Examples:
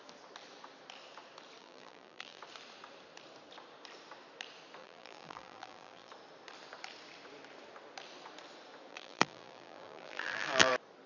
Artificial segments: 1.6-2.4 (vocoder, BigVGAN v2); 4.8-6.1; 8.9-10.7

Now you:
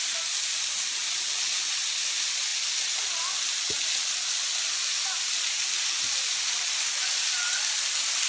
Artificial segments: none